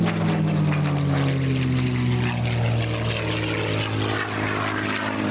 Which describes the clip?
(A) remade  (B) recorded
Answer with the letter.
B